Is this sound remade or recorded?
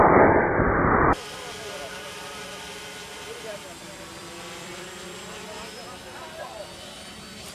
remade